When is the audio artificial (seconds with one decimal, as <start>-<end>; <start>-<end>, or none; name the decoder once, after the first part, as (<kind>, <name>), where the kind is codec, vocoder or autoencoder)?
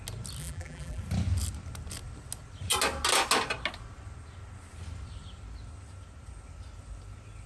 0.4-1.0 (vocoder, BigVGAN v2)